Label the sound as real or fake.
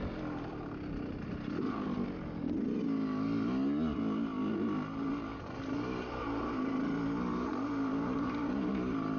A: real